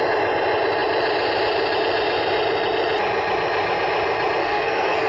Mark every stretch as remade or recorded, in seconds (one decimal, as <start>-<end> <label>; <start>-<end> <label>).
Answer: 0.0-4.4 recorded; 4.4-5.1 remade